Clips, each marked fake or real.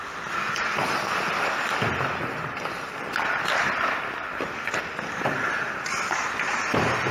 real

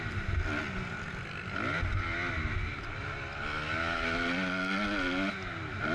real